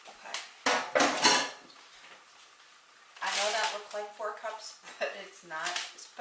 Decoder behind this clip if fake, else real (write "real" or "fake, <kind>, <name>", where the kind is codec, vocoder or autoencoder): real